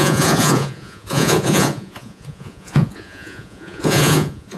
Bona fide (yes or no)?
no